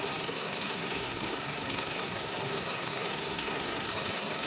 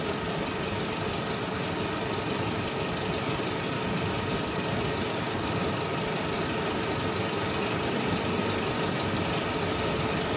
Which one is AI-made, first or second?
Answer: first